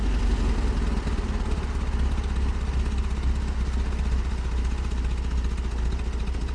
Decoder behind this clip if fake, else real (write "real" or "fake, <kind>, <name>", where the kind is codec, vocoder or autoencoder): real